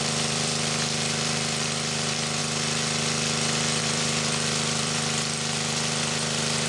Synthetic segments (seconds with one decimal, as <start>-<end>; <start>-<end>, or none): 0.0-2.4; 3.8-6.7